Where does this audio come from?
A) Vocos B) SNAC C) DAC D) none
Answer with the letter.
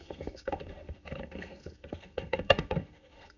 B